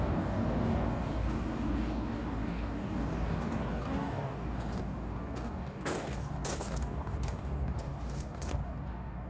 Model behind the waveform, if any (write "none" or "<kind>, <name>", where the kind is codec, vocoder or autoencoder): codec, DAC